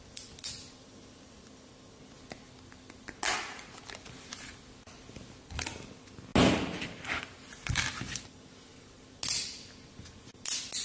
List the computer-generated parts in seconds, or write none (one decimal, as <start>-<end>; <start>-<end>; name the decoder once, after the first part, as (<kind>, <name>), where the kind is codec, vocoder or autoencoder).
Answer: none